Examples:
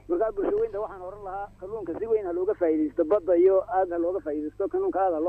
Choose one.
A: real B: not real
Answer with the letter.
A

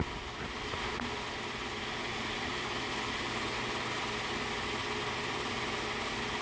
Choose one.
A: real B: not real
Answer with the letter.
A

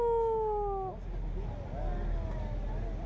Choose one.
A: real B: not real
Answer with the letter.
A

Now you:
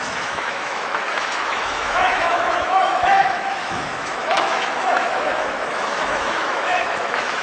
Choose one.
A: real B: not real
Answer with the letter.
B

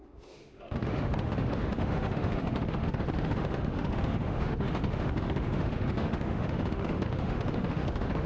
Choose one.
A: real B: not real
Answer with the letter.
B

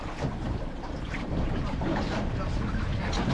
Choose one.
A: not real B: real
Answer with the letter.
B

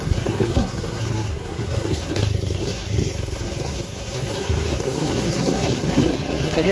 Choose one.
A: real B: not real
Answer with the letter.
B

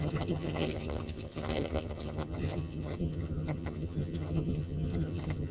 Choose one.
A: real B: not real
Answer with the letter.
B